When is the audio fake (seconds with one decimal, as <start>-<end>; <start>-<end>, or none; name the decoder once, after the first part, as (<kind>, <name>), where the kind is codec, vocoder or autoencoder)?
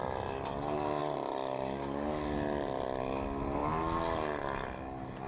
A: none